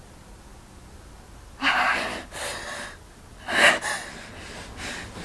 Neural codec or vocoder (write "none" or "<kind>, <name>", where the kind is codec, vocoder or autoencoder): none